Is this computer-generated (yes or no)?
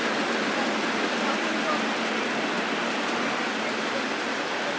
no